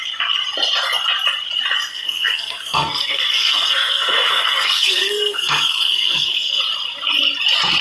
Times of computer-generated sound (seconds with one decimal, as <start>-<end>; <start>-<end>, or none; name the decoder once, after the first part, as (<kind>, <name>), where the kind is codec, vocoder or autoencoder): 1.9-6.6 (codec, SNAC)